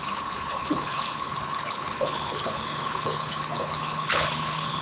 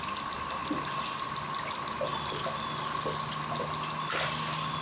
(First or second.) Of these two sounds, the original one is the second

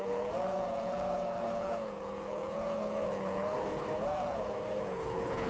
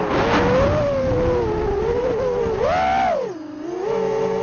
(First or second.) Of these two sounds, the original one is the second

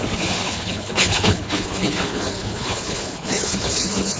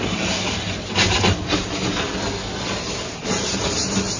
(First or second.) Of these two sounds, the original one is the second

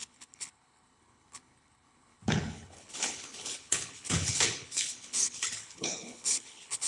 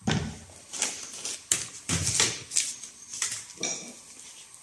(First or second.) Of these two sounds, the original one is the second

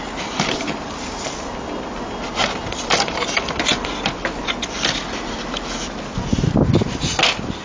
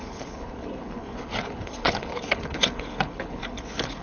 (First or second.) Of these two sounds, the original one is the first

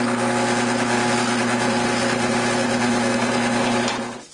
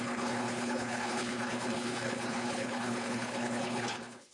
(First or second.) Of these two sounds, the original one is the first